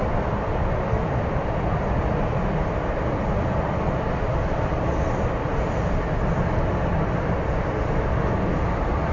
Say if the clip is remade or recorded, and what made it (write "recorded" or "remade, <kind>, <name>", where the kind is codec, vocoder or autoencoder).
recorded